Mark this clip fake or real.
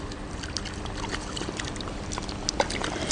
fake